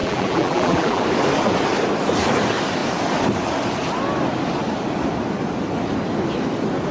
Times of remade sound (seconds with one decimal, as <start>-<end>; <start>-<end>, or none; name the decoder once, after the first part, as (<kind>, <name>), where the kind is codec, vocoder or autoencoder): 0.0-1.0 (vocoder, BigVGAN v2)